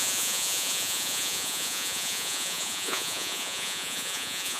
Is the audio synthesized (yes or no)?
yes